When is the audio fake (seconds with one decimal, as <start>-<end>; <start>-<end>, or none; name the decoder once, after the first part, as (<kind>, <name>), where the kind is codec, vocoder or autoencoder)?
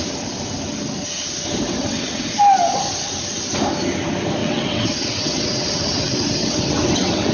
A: 1.8-2.3 (vocoder, WaveNeXt); 4.4-7.3